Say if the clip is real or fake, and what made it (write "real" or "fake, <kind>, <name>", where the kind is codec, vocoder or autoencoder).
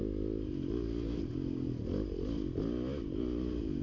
real